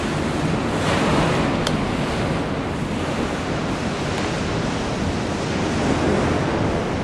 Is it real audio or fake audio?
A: real